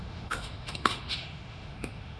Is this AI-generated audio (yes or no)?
yes